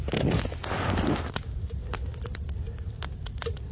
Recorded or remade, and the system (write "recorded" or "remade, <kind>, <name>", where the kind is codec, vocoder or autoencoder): recorded